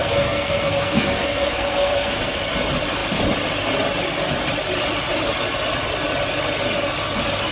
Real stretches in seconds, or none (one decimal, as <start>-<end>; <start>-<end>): 2.4-7.5